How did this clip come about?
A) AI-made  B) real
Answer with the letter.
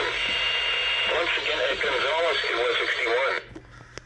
B